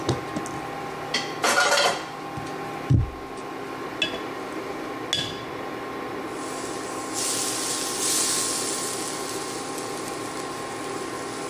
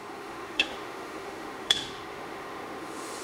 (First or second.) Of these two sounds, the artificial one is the second